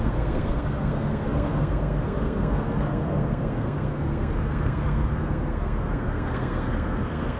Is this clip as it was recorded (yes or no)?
no